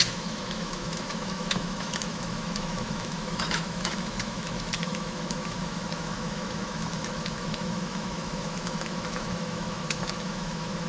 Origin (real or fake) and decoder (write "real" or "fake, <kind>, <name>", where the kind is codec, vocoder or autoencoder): fake, autoencoder, DAC-VAE